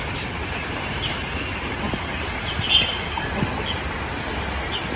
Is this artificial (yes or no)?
no